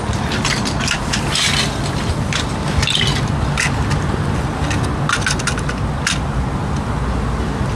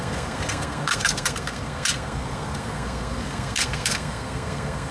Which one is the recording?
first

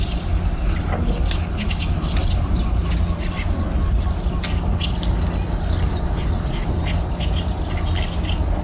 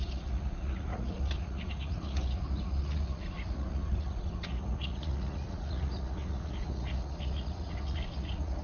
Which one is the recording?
first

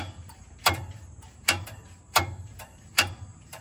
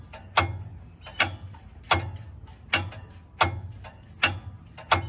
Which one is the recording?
second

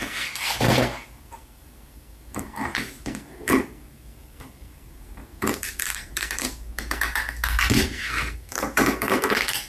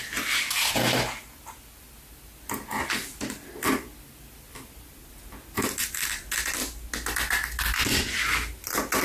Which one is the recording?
second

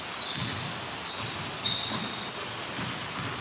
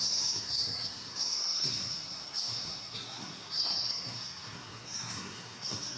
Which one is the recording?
first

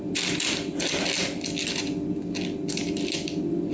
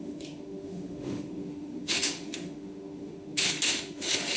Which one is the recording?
first